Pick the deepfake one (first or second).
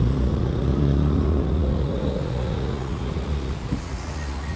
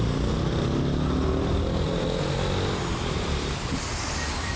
first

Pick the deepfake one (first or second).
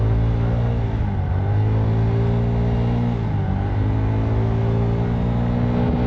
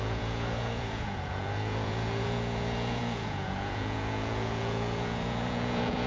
second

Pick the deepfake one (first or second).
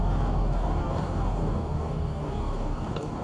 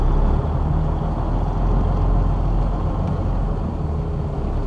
first